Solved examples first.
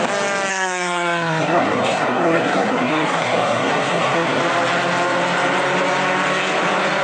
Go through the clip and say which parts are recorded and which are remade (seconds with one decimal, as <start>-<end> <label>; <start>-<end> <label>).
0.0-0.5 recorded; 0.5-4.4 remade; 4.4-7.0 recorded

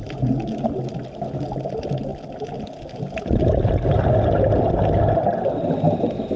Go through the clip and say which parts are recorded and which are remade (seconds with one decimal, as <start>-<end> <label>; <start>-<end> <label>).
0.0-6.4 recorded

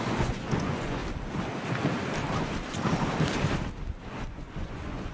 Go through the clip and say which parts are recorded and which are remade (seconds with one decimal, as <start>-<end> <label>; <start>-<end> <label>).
0.0-1.0 remade; 1.0-4.1 recorded; 4.1-5.1 remade